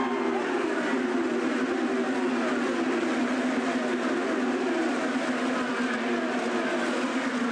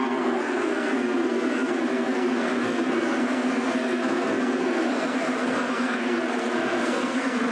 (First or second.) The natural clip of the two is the first